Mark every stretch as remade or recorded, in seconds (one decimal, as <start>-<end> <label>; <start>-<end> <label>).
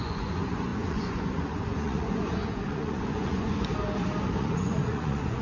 0.0-3.7 remade; 3.7-4.4 recorded; 4.4-5.4 remade